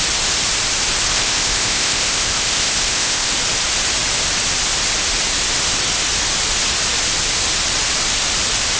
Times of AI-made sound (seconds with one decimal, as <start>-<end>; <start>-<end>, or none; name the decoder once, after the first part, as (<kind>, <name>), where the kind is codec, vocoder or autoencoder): 1.1-3.3 (codec, ZipCodec)